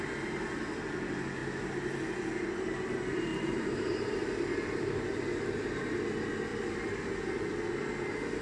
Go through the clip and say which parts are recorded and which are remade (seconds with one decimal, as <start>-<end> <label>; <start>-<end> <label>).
0.0-3.3 recorded; 3.3-4.2 remade; 4.2-8.4 recorded